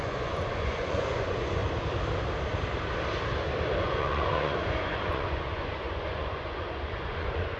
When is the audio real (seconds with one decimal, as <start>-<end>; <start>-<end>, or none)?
1.6-3.8